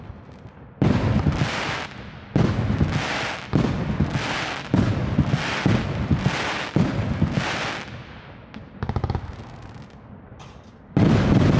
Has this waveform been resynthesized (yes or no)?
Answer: no